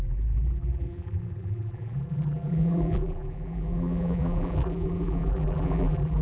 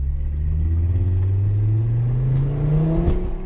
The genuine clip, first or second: second